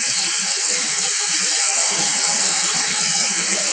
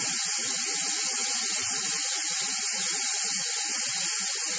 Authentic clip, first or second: second